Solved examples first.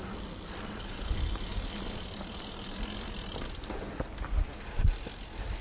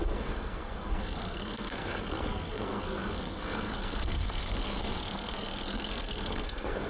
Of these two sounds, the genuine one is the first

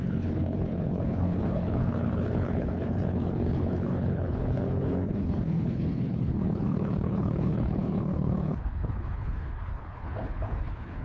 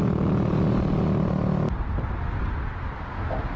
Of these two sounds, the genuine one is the second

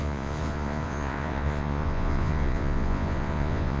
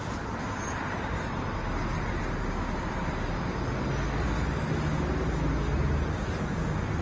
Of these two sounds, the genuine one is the second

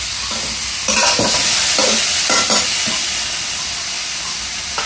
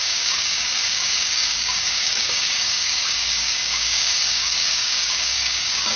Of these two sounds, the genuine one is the first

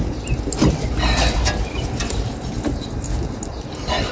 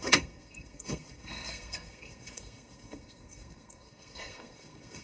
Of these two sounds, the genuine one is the first